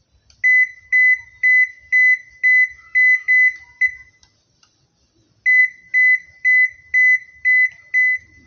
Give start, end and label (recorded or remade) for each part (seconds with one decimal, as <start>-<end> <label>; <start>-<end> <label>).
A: 0.0-8.5 recorded